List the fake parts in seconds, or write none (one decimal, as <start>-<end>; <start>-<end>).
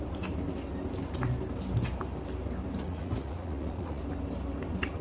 2.8-4.0